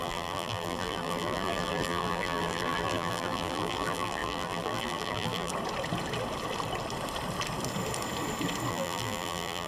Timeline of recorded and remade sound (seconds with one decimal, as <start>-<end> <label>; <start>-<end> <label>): 0.0-5.5 remade; 5.5-8.7 recorded; 8.7-9.7 remade